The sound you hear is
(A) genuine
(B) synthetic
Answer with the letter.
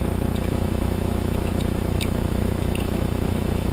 B